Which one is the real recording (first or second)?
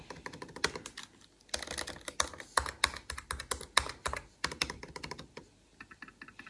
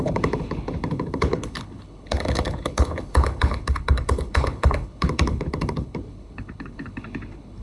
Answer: first